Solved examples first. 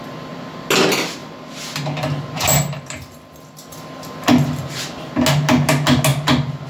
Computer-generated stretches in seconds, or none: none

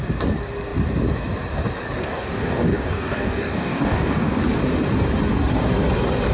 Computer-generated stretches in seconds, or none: 2.0-4.4 (codec, DAC)

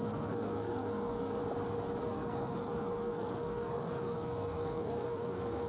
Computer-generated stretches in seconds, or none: 0.0-1.4 (codec, SNAC); 2.0-5.7